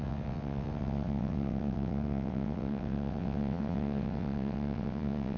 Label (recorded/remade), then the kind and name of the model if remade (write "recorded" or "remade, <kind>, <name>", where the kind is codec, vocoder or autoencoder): remade, vocoder, WaveNeXt